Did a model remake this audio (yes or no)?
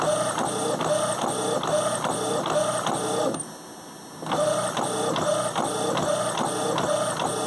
no